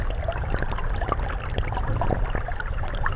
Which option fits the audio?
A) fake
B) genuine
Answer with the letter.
B